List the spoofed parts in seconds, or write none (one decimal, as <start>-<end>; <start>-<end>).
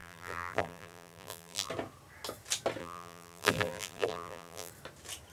0.0-1.7; 2.8-4.7